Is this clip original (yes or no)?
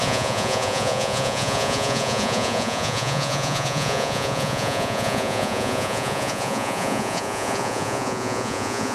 no